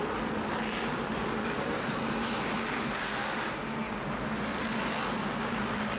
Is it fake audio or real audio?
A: real